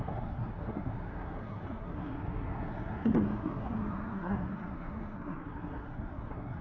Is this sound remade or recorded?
remade